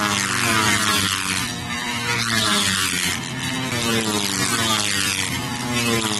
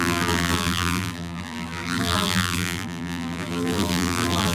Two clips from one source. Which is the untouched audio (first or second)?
first